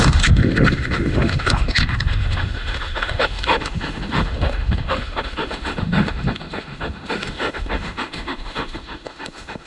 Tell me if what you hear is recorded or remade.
remade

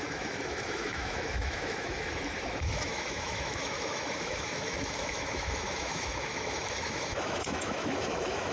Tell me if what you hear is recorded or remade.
remade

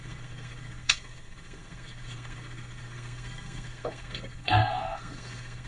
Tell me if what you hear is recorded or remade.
remade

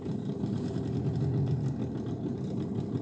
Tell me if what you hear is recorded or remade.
recorded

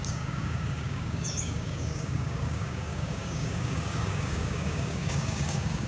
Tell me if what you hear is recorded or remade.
remade